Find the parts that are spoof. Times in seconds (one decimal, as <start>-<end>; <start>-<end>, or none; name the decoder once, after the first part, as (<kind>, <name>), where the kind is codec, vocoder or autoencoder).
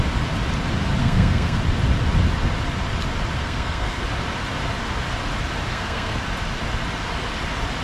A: 1.0-1.6 (codec, SNAC); 3.4-4.0; 5.7-6.2